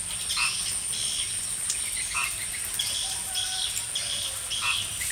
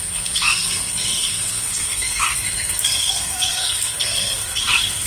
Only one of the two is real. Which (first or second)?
first